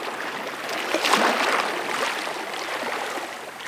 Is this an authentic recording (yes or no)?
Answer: yes